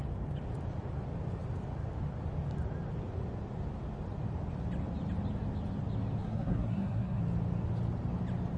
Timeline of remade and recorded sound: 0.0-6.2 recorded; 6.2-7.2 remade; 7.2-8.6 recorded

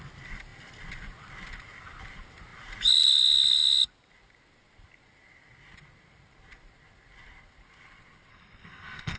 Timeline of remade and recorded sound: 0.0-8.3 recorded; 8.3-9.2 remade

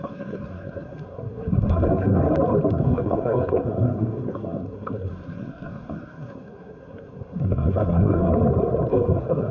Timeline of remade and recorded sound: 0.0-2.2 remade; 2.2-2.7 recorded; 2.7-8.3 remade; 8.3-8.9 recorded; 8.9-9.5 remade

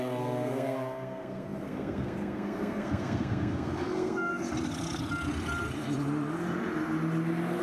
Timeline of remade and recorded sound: 0.0-4.3 remade; 4.3-7.6 recorded

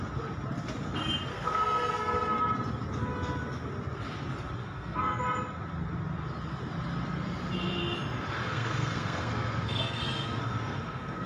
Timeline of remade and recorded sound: 0.0-1.3 recorded; 1.3-2.4 remade; 2.4-4.6 recorded; 4.6-5.2 remade; 5.2-8.4 recorded; 8.4-11.3 remade

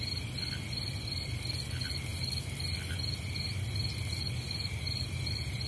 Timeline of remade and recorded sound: 0.0-5.7 recorded

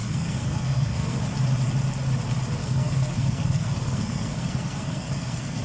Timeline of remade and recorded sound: 0.0-1.2 remade; 1.2-2.6 recorded; 2.6-5.6 remade